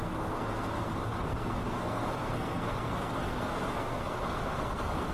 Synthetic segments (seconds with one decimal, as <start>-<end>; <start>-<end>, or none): 0.0-5.1